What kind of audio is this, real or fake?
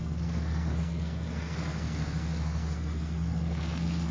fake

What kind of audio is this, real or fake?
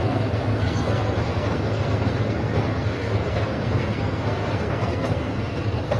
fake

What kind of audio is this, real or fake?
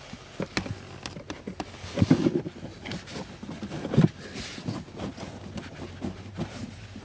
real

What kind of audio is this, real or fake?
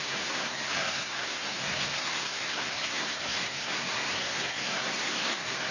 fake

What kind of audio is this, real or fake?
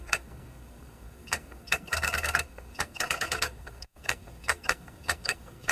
fake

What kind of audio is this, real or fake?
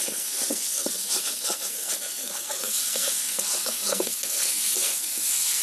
fake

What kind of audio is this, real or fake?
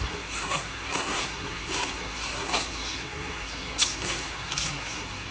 fake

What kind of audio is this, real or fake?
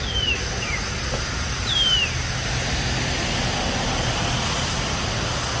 real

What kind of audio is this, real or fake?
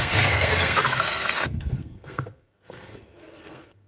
fake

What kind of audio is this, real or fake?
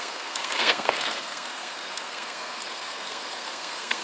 fake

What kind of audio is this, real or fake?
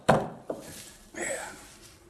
real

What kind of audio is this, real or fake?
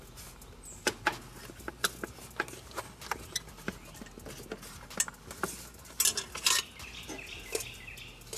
real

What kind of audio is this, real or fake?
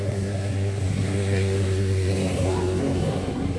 fake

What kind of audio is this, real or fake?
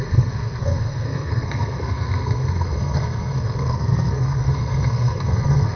fake